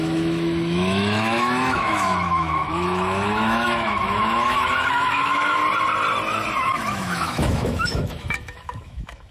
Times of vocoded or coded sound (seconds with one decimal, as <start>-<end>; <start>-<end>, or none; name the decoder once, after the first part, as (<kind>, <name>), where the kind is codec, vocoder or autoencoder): 0.0-5.6 (autoencoder, DAC-VAE); 6.6-9.3